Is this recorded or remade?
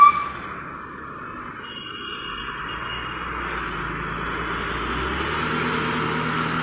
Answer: recorded